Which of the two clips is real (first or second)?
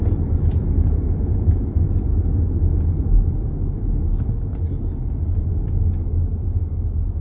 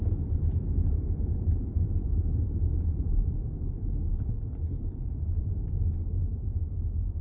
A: first